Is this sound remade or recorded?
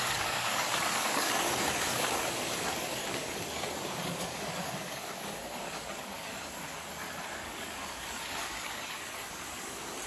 remade